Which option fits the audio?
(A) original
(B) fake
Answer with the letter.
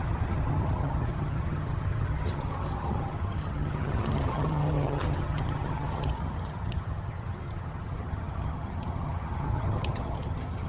B